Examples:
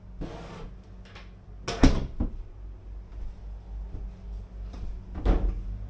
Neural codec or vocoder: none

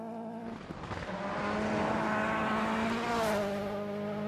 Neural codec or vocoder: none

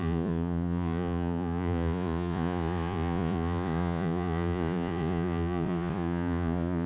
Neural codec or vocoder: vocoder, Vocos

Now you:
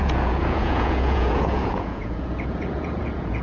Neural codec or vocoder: vocoder, Vocos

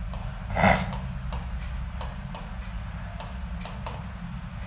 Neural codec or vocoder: none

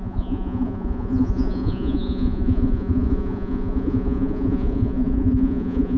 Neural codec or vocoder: vocoder, Vocos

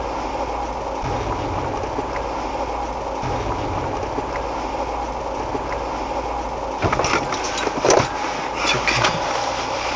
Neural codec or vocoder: none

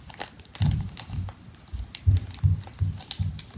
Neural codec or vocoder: none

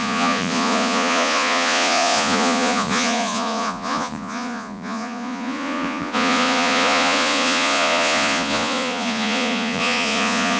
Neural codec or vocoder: vocoder, Vocos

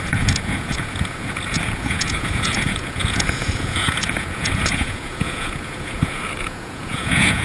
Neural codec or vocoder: vocoder, Vocos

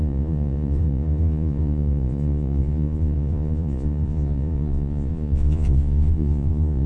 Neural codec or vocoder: vocoder, Vocos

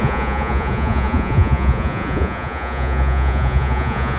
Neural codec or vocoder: vocoder, Vocos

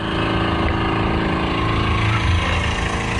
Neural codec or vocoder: none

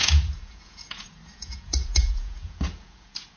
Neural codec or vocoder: vocoder, Vocos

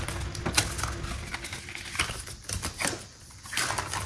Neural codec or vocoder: none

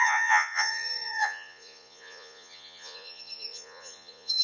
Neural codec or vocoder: vocoder, Vocos